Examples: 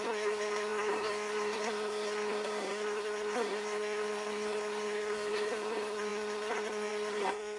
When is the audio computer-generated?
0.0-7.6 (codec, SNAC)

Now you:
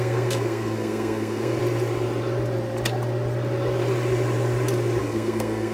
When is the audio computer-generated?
0.0-1.6 (codec, SNAC); 5.0-5.7

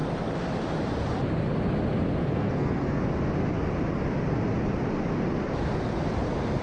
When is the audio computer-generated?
2.2-3.0 (codec, SNAC)

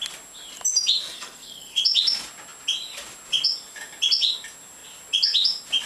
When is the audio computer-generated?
1.0-1.8 (codec, SNAC)

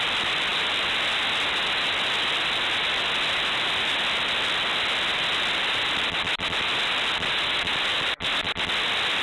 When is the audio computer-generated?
none

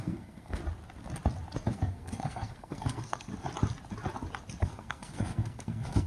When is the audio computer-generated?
0.0-0.6 (codec, SNAC); 1.7-3.3; 4.6-6.1

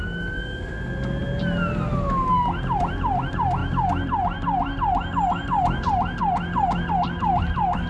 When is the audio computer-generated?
none